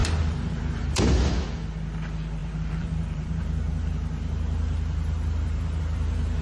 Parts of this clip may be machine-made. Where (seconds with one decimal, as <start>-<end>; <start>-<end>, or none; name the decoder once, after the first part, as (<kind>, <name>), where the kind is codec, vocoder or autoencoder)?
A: 0.0-0.9 (vocoder, BigVGAN v2); 2.4-5.8